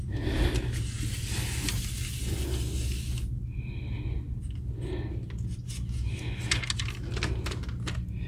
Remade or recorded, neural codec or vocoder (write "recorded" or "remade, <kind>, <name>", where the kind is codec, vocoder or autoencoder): recorded